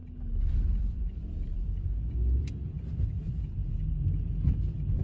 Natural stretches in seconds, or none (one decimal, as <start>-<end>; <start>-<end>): 3.6-4.6